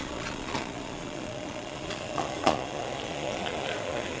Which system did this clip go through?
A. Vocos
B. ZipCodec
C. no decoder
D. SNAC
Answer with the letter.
A